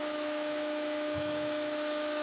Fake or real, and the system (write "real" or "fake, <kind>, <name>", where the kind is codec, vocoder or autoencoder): fake, autoencoder, DAC-VAE